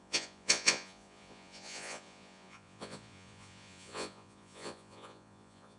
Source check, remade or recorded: remade